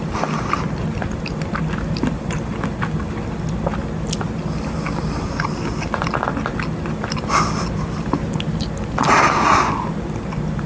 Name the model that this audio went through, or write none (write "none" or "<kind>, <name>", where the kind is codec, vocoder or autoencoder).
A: none